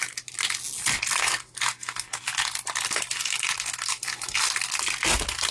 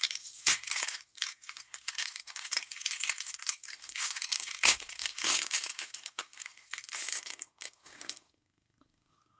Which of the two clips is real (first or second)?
first